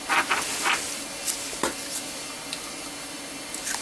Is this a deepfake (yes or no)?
yes